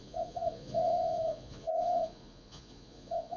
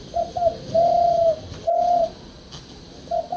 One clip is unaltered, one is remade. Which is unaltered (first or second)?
second